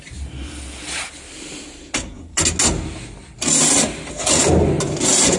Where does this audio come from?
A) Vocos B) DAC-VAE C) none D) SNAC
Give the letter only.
C